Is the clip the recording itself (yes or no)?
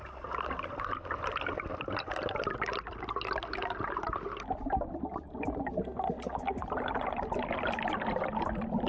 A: yes